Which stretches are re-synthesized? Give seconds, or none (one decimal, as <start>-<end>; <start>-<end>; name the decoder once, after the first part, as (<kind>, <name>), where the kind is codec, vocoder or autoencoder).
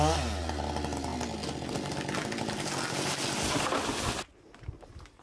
none